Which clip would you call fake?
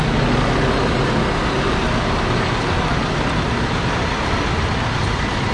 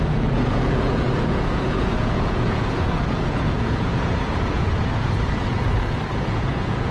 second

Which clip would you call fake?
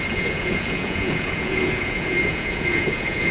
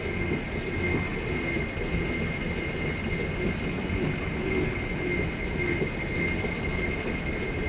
first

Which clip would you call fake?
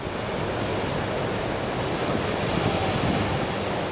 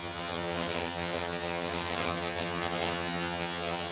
second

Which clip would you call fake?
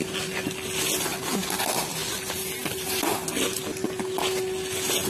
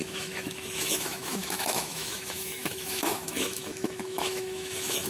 second